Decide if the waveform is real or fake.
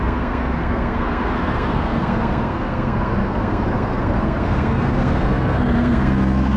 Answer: fake